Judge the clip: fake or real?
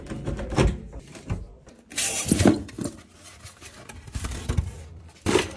fake